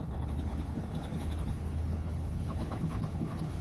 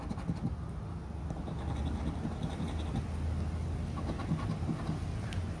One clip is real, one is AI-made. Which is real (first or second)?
second